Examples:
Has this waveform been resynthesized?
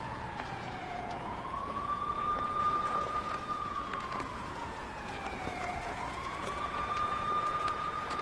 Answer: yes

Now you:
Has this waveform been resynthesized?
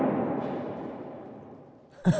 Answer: yes